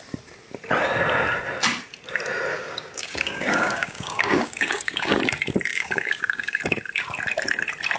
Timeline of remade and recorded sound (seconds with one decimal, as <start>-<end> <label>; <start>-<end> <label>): 0.0-2.5 recorded; 2.5-5.1 remade; 5.1-5.7 recorded; 5.7-6.6 remade; 6.6-8.0 recorded